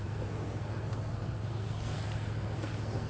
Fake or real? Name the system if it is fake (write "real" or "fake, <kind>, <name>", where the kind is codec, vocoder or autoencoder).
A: fake, codec, SNAC